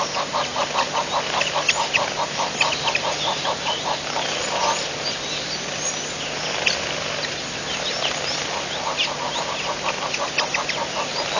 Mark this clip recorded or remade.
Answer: recorded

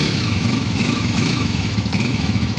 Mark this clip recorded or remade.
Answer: remade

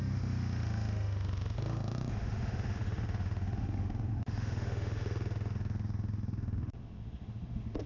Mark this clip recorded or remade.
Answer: remade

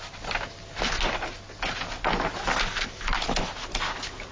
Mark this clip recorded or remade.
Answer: recorded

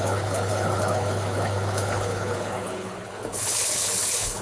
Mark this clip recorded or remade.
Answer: remade